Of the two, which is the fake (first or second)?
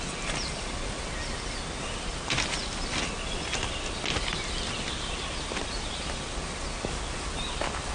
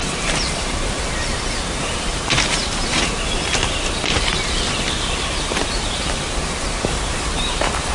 second